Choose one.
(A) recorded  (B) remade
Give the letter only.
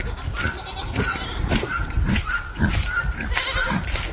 A